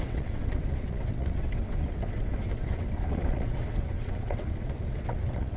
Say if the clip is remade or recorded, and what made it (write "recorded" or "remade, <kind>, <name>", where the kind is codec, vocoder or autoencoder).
remade, vocoder, WaveNeXt